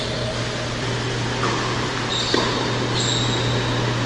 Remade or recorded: recorded